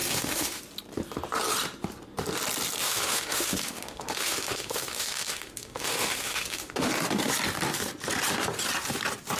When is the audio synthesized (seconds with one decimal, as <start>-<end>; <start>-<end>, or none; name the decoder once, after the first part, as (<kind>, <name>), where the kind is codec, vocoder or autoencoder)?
0.0-0.6 (autoencoder, DAC-VAE); 2.8-6.9